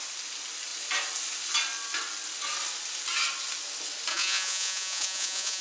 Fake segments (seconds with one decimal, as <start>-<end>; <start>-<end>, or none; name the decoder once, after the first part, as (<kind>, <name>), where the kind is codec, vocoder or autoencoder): 4.1-5.6 (vocoder, Vocos)